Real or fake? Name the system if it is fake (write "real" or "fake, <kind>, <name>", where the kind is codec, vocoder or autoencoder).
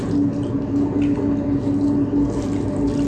real